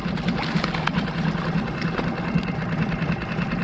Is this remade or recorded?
recorded